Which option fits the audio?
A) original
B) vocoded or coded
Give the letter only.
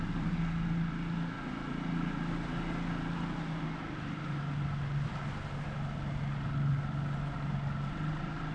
A